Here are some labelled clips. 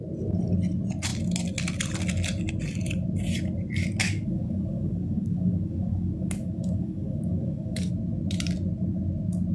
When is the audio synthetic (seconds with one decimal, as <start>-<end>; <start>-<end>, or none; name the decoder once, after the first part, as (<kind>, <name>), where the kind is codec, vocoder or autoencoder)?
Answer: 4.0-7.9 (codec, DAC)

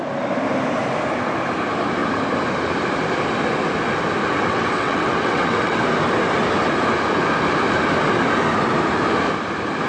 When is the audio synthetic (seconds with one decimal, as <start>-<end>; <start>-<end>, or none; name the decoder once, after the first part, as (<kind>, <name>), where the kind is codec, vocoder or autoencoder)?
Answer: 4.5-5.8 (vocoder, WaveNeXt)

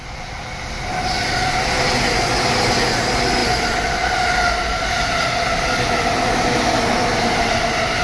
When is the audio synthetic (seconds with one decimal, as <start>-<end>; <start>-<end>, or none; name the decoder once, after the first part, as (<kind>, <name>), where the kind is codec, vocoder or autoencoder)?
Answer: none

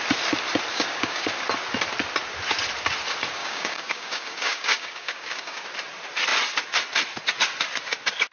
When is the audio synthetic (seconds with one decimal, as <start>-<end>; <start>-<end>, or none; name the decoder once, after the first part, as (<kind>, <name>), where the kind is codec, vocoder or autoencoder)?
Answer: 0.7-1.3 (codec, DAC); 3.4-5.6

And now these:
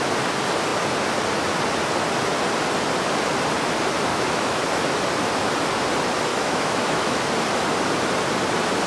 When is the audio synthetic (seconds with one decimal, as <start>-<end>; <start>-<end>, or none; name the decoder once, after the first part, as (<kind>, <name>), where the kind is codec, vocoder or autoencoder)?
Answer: 4.1-4.6 (autoencoder, DAC-VAE); 6.3-7.2

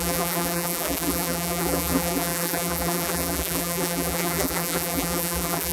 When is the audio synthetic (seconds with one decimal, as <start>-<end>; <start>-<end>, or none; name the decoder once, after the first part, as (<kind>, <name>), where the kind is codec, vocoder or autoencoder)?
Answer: 0.0-5.7 (vocoder, BigVGAN v2)

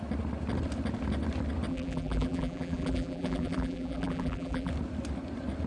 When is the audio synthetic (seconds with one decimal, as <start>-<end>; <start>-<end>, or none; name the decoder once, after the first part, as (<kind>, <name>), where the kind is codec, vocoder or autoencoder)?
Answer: 1.7-4.7 (vocoder, BigVGAN v2)